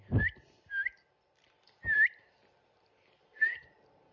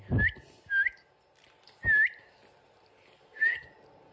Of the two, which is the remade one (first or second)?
first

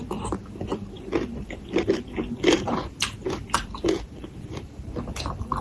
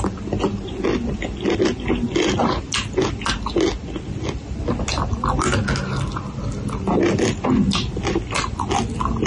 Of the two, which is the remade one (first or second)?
first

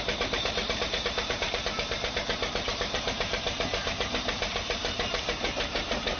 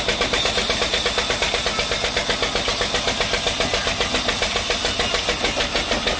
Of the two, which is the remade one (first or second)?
first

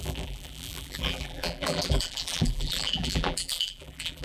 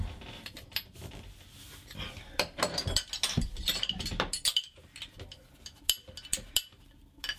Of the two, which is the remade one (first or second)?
first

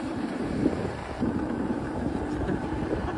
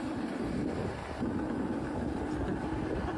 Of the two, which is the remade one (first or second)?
first